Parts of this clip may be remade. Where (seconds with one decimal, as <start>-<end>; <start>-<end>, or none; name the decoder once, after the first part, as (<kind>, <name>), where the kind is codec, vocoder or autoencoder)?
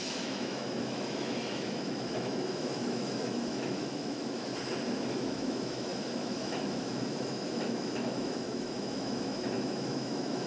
0.0-4.5 (autoencoder, DAC-VAE); 5.1-10.5